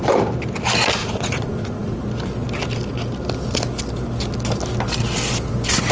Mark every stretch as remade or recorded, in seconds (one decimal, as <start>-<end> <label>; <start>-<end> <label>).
0.0-1.0 recorded; 1.0-2.0 remade; 2.0-5.9 recorded